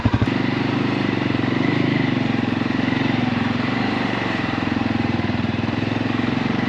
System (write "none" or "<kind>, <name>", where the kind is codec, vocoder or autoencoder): vocoder, BigVGAN v2